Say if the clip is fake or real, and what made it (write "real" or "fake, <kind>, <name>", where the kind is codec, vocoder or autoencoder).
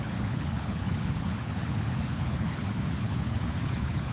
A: fake, codec, HILCodec